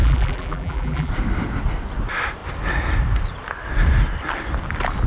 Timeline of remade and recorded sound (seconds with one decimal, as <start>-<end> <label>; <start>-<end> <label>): 0.0-1.1 remade; 1.1-5.1 recorded